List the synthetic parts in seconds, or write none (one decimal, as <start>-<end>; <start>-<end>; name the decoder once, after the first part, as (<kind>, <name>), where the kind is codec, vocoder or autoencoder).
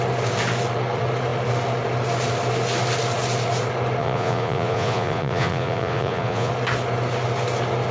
4.0-6.5 (vocoder, Vocos)